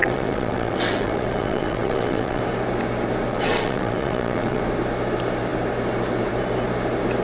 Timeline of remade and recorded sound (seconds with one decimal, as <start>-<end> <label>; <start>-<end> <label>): 0.0-2.4 remade; 2.4-3.3 recorded; 3.3-4.6 remade; 4.6-7.2 recorded